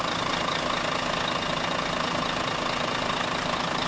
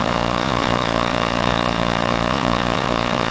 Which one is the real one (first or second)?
first